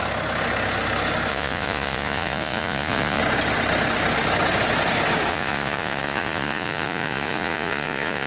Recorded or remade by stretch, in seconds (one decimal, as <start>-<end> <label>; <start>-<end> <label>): 0.0-1.3 recorded; 1.3-3.2 remade; 3.2-5.3 recorded; 5.3-8.3 remade

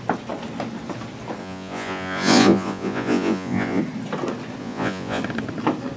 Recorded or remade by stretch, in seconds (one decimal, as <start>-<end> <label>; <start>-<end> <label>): 0.0-1.4 recorded; 1.4-3.8 remade; 3.8-4.6 recorded; 4.6-5.2 remade; 5.2-6.0 recorded

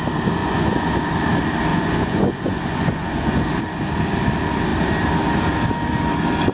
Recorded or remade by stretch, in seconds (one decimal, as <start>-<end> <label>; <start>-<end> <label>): 0.0-0.4 recorded; 0.4-0.9 remade; 0.9-1.7 recorded; 1.7-3.6 remade; 3.6-6.5 recorded

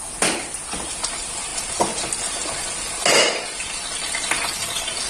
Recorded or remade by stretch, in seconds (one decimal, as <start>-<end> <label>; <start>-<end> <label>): 0.0-5.1 recorded